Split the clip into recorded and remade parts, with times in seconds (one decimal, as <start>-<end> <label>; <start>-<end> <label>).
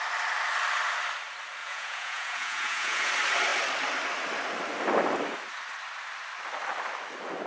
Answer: 0.0-1.6 recorded; 1.6-3.1 remade; 3.1-7.5 recorded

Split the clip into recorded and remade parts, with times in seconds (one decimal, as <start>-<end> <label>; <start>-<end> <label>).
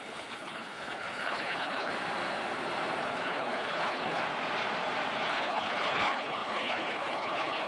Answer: 0.0-1.9 remade; 1.9-3.0 recorded; 3.0-4.2 remade; 4.2-5.3 recorded; 5.3-7.7 remade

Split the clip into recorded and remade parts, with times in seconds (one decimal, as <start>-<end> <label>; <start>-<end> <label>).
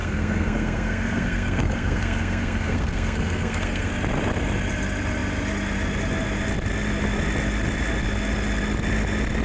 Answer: 0.0-3.9 remade; 3.9-9.4 recorded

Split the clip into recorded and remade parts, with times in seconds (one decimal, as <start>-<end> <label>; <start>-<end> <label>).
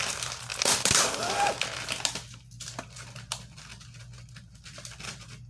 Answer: 0.0-5.5 recorded